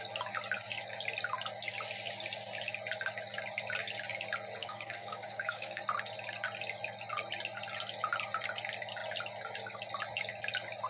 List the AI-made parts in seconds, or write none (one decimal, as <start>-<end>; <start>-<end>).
4.6-5.8